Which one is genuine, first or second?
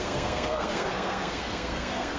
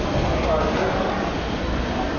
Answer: second